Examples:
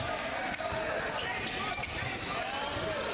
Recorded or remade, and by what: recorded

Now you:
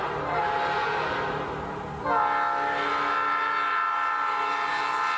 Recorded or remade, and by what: recorded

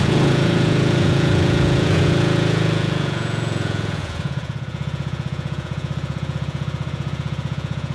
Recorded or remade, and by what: remade, vocoder, Vocos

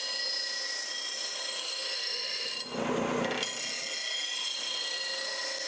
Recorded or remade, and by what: recorded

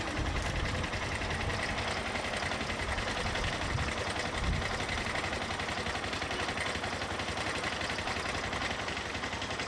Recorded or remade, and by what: recorded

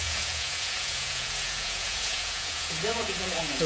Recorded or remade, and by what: remade, vocoder, Vocos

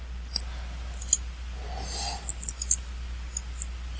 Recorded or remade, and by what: recorded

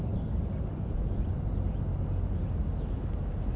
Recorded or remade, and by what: recorded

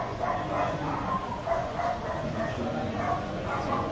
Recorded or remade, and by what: remade, vocoder, Vocos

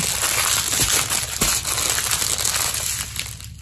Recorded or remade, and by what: recorded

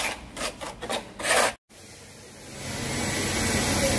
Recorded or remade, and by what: recorded